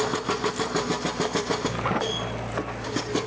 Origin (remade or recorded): recorded